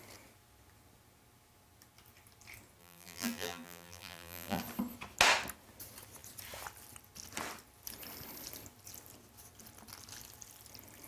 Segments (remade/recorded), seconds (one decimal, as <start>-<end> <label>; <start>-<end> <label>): 0.0-2.8 recorded; 2.8-4.6 remade; 4.6-11.1 recorded